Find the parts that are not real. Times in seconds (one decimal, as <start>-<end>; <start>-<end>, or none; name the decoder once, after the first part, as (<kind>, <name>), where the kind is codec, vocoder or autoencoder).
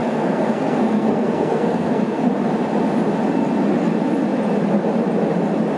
0.0-2.3 (codec, SNAC)